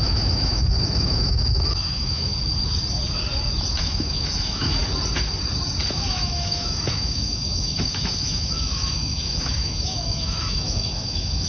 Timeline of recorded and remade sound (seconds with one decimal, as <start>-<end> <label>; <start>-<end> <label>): 0.0-2.3 remade; 2.3-3.8 recorded; 3.8-4.8 remade; 4.8-5.9 recorded; 5.9-11.5 remade